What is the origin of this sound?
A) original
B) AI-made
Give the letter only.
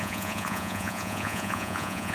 B